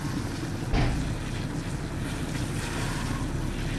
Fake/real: real